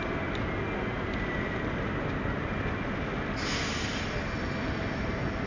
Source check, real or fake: real